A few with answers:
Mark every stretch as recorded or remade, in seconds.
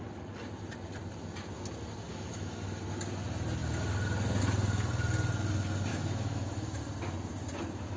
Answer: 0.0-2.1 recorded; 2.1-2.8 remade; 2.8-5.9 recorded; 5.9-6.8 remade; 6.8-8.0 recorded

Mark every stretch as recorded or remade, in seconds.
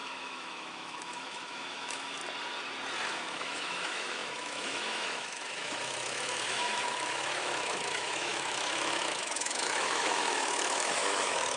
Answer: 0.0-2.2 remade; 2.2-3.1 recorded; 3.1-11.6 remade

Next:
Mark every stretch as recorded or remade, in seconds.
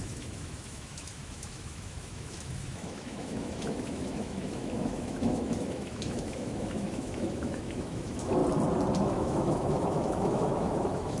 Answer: 0.0-8.4 remade; 8.4-9.0 recorded; 9.0-11.2 remade